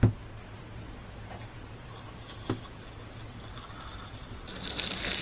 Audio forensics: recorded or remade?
recorded